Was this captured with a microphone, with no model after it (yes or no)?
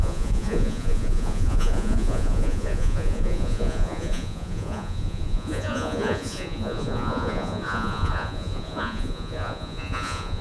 no